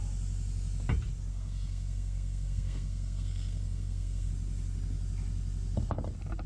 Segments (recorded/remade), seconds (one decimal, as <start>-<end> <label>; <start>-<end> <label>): 0.0-1.3 recorded; 1.3-4.3 remade; 4.3-6.5 recorded